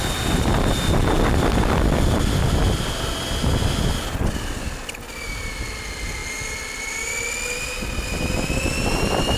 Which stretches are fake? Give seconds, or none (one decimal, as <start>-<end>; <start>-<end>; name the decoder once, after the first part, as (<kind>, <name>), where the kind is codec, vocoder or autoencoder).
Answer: none